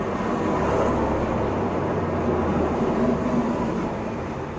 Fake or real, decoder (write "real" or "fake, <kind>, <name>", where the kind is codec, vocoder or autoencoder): real